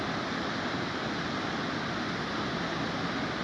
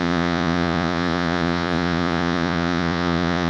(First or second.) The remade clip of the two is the second